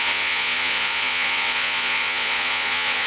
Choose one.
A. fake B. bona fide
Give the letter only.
A